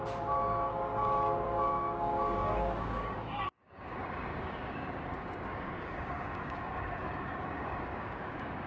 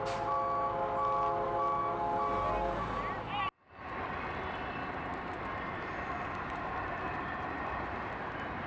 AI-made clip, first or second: first